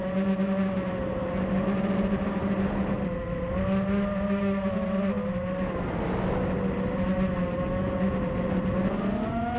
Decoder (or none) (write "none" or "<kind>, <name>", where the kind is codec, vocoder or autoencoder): none